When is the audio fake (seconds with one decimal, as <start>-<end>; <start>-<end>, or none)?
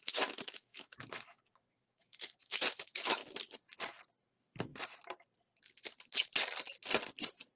0.0-3.2; 4.3-4.7